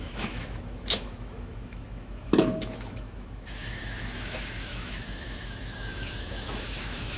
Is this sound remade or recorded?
remade